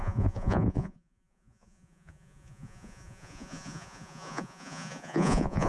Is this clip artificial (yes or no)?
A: yes